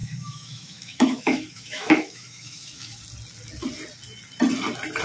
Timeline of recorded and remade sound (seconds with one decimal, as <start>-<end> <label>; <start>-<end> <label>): 0.0-3.0 remade; 3.0-5.0 recorded